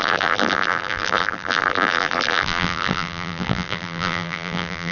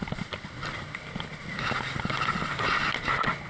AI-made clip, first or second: first